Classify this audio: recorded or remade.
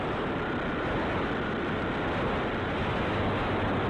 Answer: recorded